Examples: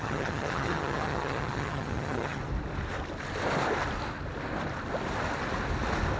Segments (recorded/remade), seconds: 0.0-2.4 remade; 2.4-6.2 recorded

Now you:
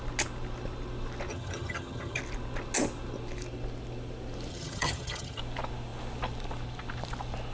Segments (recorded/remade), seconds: 0.0-1.3 recorded; 1.3-2.2 remade; 2.2-4.5 recorded; 4.5-5.4 remade; 5.4-7.5 recorded

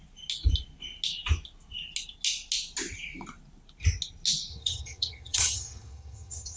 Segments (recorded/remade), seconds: 0.0-4.5 recorded; 4.5-6.6 remade

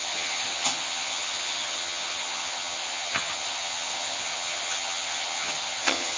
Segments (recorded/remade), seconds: 0.0-6.2 remade

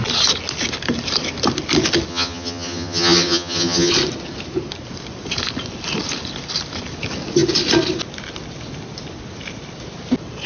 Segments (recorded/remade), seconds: 0.0-2.1 recorded; 2.1-3.9 remade; 3.9-10.5 recorded